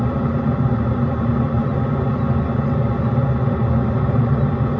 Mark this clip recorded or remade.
recorded